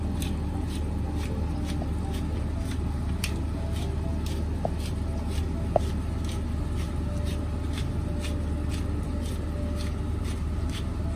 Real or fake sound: real